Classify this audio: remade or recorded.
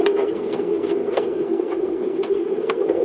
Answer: remade